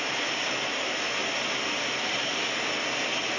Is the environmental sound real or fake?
real